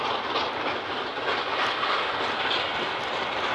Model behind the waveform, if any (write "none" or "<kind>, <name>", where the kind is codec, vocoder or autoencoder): none